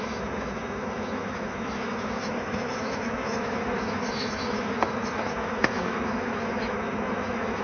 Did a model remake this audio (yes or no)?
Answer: yes